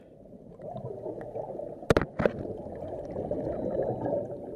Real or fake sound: real